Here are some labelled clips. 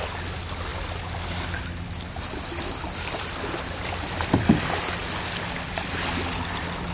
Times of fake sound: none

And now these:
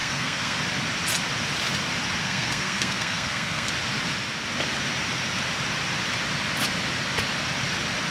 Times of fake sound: 0.0-0.6 (codec, SNAC); 2.2-3.7

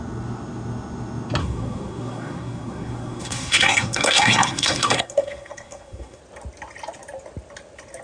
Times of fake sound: 1.4-6.2 (codec, SNAC)

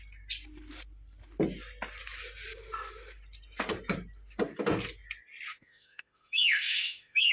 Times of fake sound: 5.5-7.3 (autoencoder, DAC-VAE)

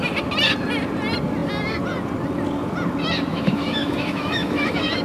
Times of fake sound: 3.3-5.0 (autoencoder, DAC-VAE)